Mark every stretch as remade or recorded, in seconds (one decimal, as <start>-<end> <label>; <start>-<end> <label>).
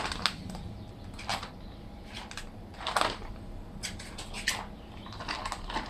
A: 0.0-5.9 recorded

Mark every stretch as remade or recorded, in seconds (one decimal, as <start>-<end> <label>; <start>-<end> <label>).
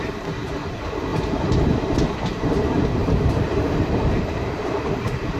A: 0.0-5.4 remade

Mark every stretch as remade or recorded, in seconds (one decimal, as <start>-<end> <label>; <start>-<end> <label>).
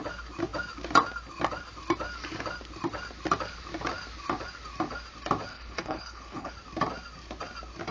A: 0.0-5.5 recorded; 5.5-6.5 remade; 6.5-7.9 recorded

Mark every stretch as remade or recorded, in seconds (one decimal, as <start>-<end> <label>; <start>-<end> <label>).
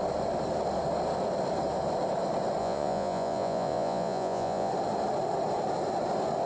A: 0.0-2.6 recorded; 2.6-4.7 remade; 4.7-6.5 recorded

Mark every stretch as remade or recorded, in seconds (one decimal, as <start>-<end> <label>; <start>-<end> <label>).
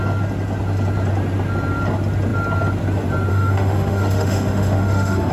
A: 0.0-3.3 recorded; 3.3-5.3 remade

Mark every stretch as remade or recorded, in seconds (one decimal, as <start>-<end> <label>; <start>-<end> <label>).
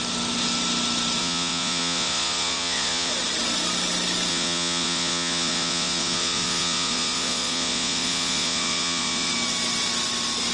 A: 0.0-1.2 recorded; 1.2-3.1 remade; 3.1-4.3 recorded; 4.3-9.3 remade; 9.3-10.5 recorded